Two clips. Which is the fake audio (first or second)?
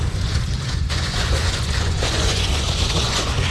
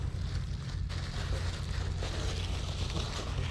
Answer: first